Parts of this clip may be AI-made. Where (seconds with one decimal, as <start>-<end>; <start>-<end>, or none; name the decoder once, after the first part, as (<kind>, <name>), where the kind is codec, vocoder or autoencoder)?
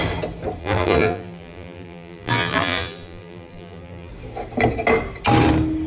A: 0.6-4.1 (vocoder, BigVGAN v2)